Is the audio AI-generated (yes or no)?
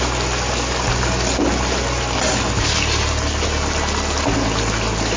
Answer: no